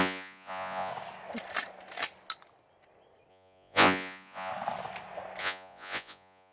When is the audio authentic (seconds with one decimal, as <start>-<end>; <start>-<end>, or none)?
0.9-3.3; 4.5-5.4